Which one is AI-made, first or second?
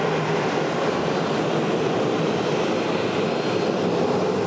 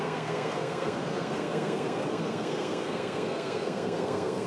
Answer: second